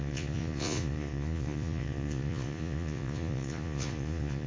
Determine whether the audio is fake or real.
fake